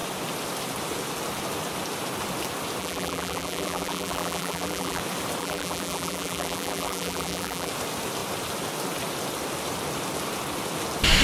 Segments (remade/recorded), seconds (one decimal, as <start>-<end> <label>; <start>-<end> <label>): 0.0-2.8 recorded; 2.8-5.0 remade; 5.0-5.4 recorded; 5.4-7.7 remade; 7.7-11.2 recorded